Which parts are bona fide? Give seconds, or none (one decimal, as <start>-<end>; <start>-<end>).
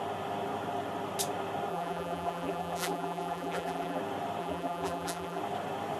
0.0-1.7; 4.0-4.4; 5.4-6.0